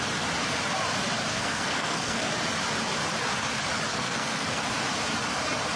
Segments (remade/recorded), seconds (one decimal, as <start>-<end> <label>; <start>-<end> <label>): 0.0-1.3 recorded; 1.3-2.3 remade; 2.3-3.9 recorded; 3.9-4.6 remade; 4.6-5.8 recorded

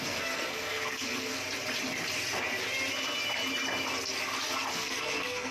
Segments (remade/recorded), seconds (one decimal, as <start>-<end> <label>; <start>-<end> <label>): 0.0-1.4 remade; 1.4-4.7 recorded; 4.7-5.5 remade

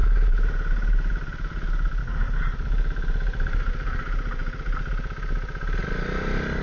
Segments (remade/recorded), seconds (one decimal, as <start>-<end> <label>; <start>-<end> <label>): 0.0-6.6 recorded